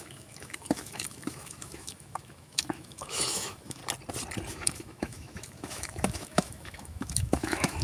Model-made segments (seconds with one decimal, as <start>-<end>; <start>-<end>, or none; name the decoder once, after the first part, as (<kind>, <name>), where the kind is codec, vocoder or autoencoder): 0.0-3.8 (autoencoder, DAC-VAE); 4.5-7.8